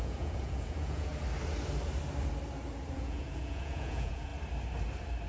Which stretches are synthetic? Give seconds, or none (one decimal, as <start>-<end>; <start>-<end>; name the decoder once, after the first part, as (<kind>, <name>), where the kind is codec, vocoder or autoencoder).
0.0-1.1 (vocoder, Vocos); 2.9-4.3